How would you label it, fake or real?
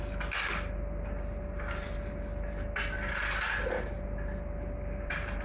real